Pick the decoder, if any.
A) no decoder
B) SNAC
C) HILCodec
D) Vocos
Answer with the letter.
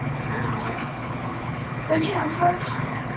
C